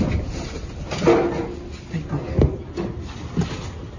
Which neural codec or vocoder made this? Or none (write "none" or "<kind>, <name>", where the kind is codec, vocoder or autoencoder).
none